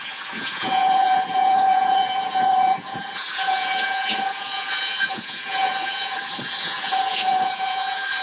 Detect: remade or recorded remade